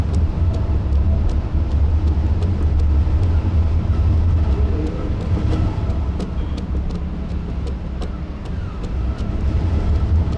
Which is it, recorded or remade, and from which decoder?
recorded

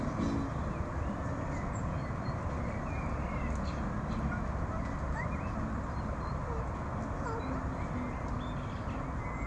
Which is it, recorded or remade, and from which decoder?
recorded